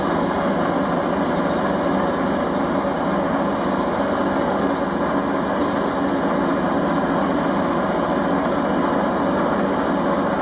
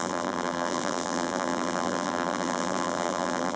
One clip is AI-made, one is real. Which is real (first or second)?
first